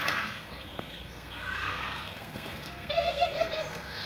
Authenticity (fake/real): fake